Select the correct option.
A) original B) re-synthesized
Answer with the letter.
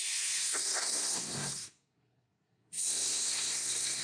B